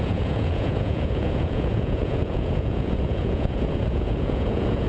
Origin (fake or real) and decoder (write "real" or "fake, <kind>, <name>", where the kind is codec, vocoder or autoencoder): fake, vocoder, Vocos